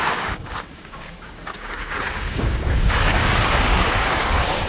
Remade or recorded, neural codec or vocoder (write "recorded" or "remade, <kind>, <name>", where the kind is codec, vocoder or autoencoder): remade, codec, DAC